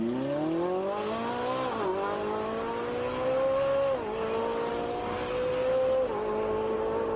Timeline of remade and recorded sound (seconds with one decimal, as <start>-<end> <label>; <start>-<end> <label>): 0.0-7.2 recorded